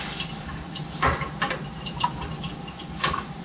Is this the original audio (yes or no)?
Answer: no